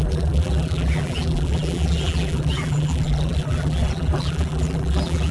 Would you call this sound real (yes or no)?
no